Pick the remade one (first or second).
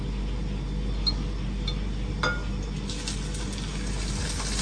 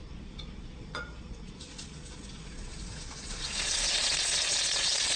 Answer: second